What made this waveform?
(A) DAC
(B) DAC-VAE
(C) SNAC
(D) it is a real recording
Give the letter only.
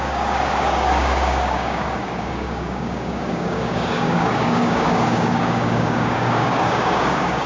A